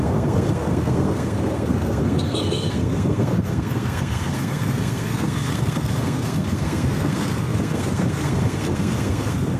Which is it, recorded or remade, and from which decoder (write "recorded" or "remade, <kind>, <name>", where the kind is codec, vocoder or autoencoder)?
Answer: remade, codec, SNAC